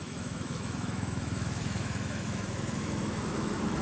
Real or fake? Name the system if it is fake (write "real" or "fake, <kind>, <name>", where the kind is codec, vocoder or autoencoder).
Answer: fake, autoencoder, DAC-VAE